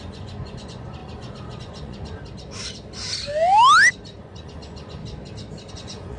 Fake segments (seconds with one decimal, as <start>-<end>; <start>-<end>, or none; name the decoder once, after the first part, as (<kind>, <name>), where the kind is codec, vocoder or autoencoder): 0.0-2.2 (vocoder, Vocos); 4.2-5.0; 5.7-6.2